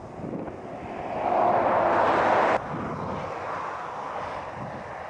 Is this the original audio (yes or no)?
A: yes